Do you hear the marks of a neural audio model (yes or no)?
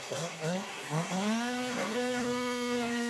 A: yes